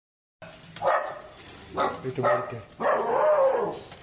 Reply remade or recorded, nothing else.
recorded